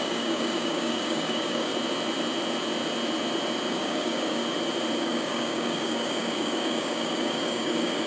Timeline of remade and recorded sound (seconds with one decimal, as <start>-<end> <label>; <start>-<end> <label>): 0.0-1.7 remade; 1.7-3.7 recorded; 3.7-4.4 remade; 4.4-5.0 recorded; 5.0-8.1 remade